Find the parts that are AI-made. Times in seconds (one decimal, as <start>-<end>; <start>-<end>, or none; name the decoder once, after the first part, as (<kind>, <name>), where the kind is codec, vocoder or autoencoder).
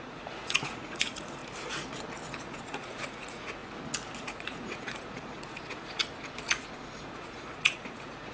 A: 0.0-1.4 (vocoder, Vocos); 2.4-3.6; 4.2-6.0; 7.0-8.3